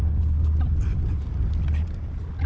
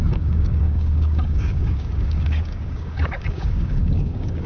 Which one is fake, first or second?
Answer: second